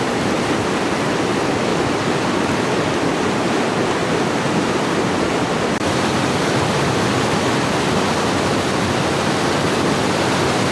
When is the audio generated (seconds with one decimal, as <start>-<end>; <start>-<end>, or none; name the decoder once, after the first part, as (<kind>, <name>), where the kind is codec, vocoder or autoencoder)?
1.7-2.3 (vocoder, BigVGAN v2)